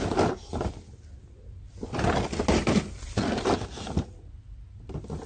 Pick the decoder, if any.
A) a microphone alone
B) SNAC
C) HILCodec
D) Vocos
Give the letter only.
A